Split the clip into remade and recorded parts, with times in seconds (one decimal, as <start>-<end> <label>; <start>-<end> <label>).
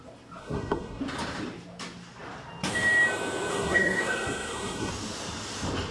0.0-0.4 recorded; 0.4-1.0 remade; 1.0-3.5 recorded; 3.5-4.9 remade; 4.9-5.9 recorded